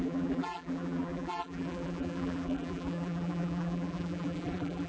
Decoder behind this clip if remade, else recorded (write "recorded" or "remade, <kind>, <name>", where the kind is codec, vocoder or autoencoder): remade, vocoder, BigVGAN v2